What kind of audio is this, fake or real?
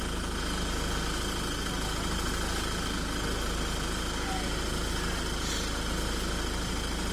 real